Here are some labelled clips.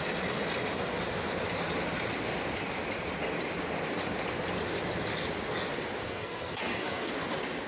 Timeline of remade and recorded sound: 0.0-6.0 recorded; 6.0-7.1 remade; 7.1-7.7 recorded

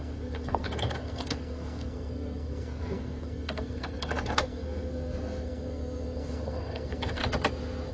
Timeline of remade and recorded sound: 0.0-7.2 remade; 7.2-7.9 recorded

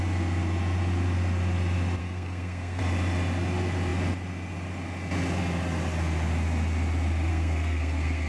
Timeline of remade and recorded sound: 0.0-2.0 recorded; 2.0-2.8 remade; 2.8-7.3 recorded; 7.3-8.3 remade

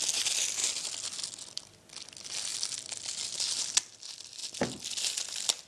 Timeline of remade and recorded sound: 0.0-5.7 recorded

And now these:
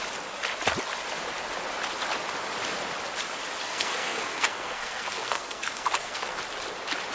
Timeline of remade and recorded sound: 0.0-3.6 recorded; 3.6-6.4 remade; 6.4-7.1 recorded